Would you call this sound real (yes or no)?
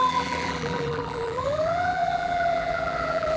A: no